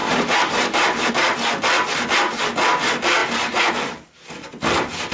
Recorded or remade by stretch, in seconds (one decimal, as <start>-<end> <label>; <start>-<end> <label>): 0.0-1.1 remade; 1.1-5.1 recorded